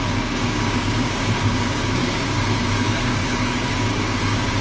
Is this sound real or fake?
fake